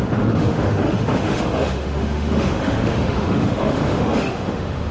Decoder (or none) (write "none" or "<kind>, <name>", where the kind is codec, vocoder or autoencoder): autoencoder, DAC-VAE